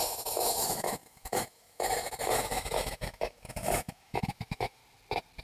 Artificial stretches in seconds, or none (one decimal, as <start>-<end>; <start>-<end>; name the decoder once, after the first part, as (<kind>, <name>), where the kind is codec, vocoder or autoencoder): 0.0-4.8 (autoencoder, DAC-VAE)